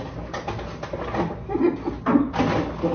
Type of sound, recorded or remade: recorded